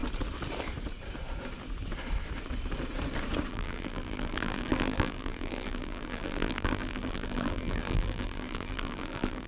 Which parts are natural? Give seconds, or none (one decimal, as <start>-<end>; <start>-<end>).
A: 0.0-3.5